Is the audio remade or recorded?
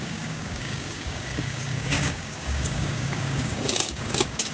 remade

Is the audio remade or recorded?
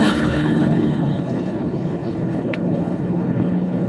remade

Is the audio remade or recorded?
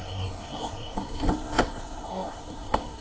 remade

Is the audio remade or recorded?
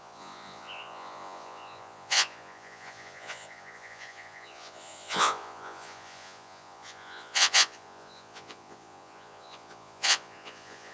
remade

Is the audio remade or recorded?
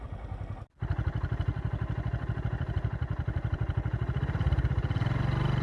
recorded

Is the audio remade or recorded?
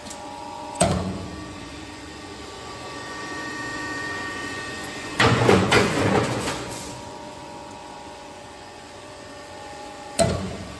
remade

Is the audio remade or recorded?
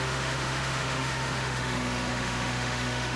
remade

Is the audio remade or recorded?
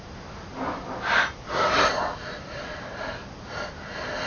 recorded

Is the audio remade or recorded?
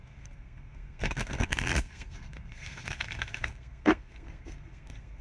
remade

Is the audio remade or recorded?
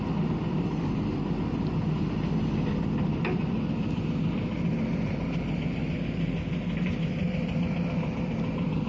recorded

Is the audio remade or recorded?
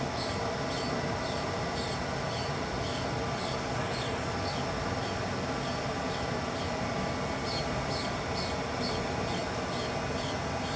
recorded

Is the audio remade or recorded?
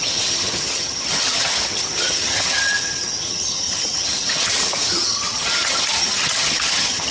remade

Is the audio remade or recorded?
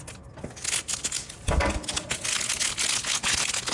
recorded